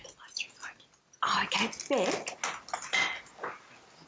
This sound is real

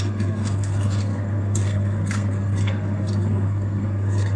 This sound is fake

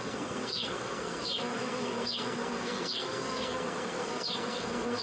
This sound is fake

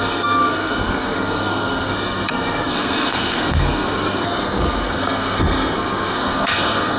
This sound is fake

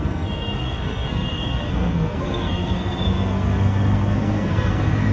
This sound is fake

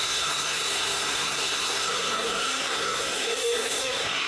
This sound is fake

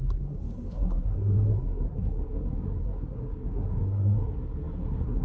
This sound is fake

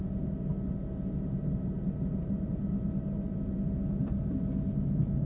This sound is real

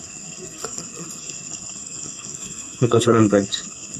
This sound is fake